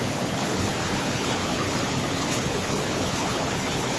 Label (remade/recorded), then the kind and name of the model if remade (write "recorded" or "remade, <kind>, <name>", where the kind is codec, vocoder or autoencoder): remade, codec, HILCodec